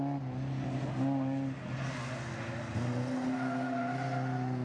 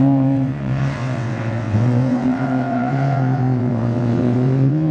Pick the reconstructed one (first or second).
second